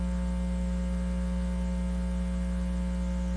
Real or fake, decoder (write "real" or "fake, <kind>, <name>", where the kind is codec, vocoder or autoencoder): real